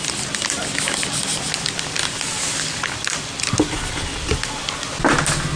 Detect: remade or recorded recorded